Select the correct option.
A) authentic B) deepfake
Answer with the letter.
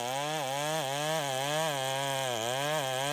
A